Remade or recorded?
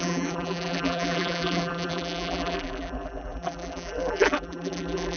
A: remade